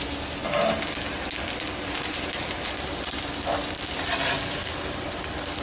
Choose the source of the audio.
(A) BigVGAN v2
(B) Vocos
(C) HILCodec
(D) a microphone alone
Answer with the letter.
D